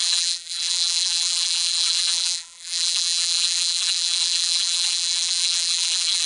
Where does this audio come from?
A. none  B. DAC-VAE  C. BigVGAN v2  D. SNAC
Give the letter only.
C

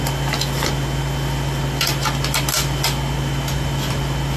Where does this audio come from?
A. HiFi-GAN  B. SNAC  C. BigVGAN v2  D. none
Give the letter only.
D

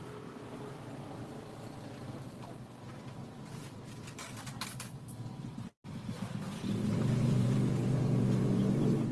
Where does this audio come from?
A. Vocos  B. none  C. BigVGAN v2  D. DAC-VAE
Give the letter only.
C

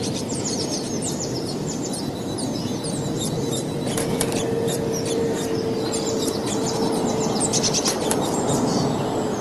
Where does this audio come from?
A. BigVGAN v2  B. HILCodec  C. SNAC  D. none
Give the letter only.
A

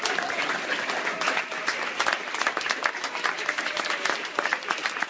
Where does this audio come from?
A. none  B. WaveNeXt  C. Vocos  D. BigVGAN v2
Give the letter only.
A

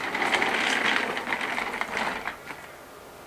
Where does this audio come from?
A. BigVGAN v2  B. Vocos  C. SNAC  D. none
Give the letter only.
D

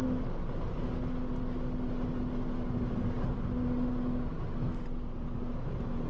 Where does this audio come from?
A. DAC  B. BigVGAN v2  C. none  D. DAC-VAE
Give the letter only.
C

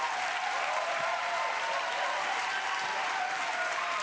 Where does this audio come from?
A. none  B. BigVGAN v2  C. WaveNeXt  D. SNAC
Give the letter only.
A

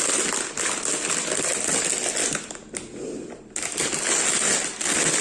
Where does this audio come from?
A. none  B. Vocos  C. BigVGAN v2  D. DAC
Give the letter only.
A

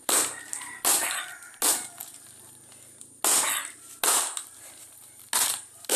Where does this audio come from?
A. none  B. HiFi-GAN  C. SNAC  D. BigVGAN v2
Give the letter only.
A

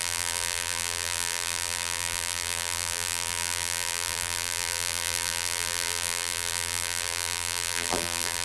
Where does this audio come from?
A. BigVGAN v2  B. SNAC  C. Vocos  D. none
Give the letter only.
A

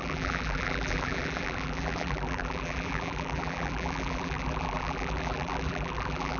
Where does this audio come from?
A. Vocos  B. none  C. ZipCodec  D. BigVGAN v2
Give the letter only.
D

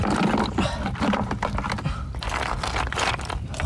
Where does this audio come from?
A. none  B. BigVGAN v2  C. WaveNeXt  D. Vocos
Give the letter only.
A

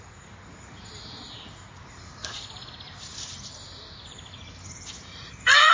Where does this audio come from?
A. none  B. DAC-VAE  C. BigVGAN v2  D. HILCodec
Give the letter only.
C